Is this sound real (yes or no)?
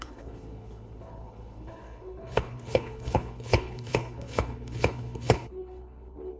no